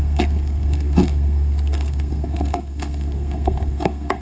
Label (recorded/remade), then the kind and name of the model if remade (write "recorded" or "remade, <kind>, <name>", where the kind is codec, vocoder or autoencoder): remade, codec, SNAC